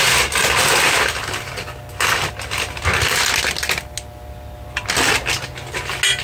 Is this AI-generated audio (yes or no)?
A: no